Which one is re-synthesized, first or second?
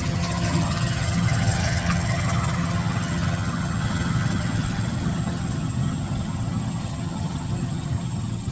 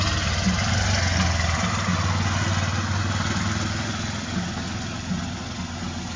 first